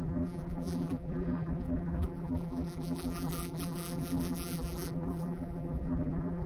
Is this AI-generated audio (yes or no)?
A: yes